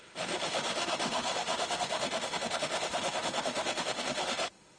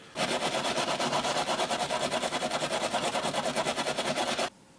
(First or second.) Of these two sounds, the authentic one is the second